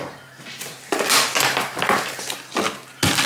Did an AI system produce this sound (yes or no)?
no